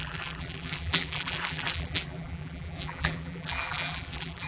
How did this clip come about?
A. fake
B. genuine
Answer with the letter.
A